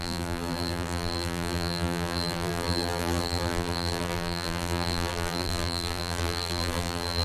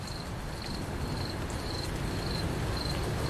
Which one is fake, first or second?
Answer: first